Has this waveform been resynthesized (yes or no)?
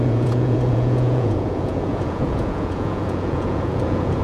yes